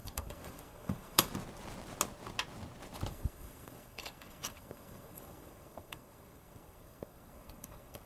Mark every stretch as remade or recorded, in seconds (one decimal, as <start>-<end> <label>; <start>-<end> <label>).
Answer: 0.0-1.3 remade; 1.3-3.1 recorded; 3.1-8.1 remade